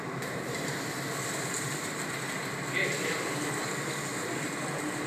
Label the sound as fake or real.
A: real